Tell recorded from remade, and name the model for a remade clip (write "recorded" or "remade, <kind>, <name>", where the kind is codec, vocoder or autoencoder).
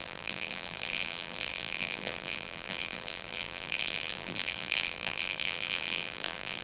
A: remade, vocoder, BigVGAN v2